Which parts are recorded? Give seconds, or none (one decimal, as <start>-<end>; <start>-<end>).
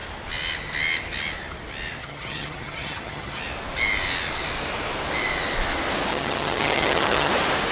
0.0-2.0; 3.4-6.1; 7.3-7.7